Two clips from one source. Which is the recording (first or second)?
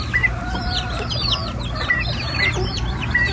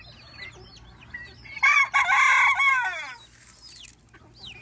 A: second